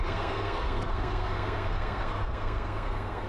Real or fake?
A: fake